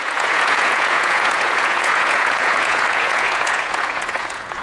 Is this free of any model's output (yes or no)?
no